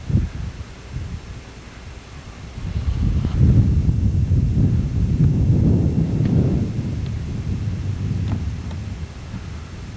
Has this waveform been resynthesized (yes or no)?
no